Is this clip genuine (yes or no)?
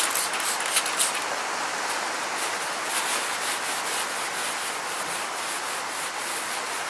yes